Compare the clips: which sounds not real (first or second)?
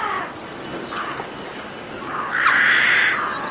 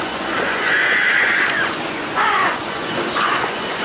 second